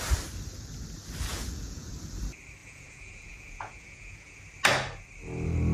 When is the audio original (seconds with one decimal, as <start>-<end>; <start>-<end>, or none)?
0.0-1.3; 1.9-2.6; 4.4-5.7